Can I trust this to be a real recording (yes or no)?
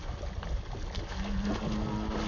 yes